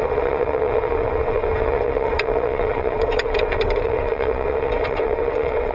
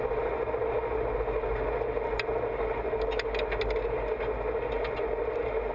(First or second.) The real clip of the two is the second